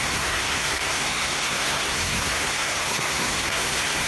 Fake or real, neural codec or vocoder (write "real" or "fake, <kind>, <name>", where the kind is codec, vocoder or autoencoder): fake, codec, SNAC